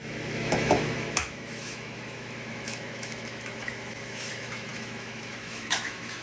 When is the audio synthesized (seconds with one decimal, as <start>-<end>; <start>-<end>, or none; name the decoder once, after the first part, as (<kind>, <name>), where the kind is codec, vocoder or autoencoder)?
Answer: 0.0-6.2 (autoencoder, DAC-VAE)